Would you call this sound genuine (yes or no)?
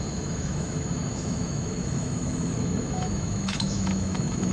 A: no